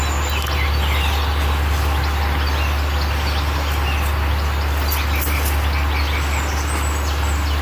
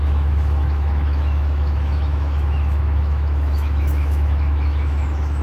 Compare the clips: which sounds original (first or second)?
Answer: first